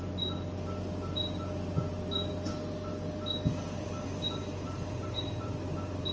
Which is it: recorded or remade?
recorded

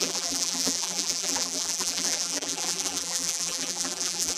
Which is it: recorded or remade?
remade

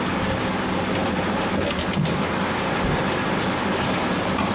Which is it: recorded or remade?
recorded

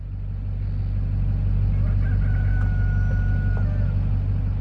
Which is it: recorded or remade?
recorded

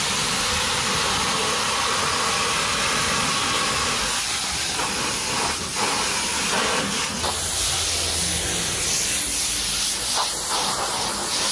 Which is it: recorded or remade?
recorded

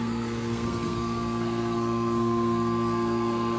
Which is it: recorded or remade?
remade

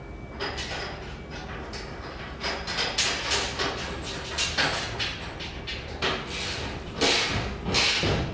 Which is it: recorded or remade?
recorded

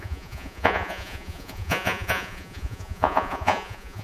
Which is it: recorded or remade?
remade